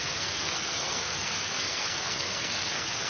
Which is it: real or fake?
fake